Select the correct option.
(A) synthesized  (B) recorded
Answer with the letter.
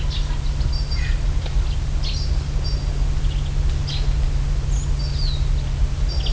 B